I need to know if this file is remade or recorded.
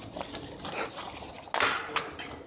recorded